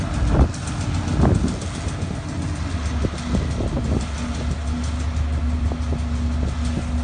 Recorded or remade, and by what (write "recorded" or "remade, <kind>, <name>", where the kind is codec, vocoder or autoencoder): recorded